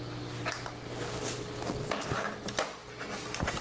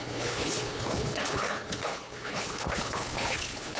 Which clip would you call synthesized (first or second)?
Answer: second